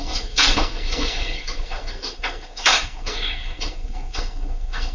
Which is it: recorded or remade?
remade